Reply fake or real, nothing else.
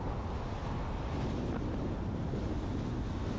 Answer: real